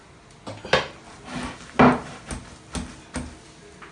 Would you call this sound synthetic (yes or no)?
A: no